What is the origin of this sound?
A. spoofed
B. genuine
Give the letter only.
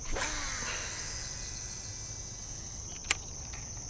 B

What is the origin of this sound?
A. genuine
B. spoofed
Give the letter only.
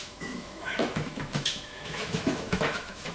B